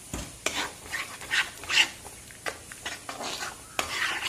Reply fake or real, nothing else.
real